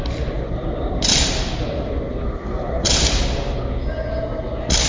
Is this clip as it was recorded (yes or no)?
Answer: yes